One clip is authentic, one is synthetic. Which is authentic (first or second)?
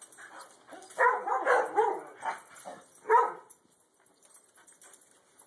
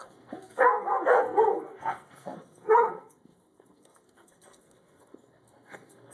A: first